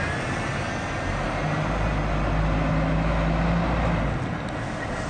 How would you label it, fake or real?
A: real